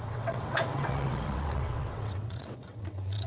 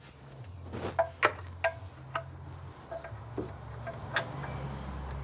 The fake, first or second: first